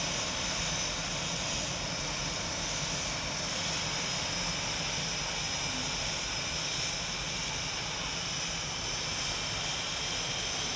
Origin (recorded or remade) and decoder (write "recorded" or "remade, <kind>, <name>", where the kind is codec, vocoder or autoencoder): recorded